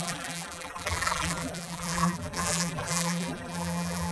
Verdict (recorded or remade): remade